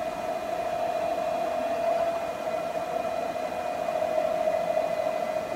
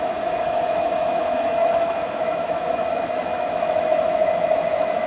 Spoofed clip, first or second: second